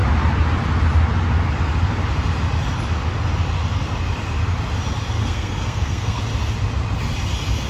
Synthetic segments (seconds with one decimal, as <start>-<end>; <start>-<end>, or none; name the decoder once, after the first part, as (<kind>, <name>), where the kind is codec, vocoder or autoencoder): 5.2-6.2 (codec, SNAC)